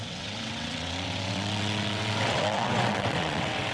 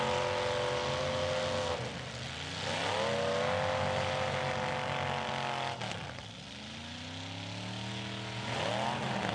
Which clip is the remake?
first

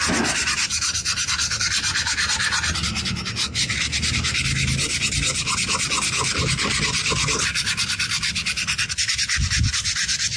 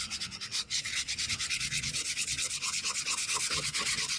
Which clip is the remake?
second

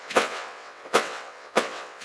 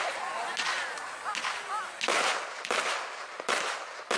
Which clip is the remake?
first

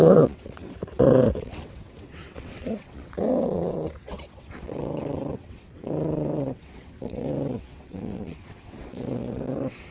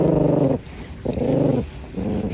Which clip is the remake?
first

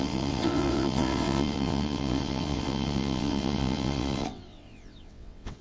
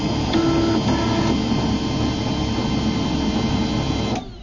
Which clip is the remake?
first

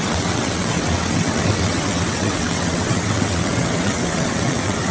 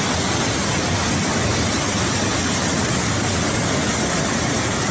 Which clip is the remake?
first